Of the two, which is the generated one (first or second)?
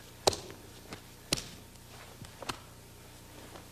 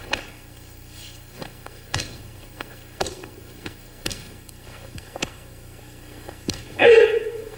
second